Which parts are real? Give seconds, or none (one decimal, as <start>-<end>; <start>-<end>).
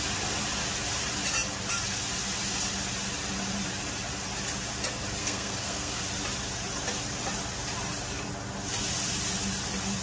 0.0-5.2; 6.0-10.0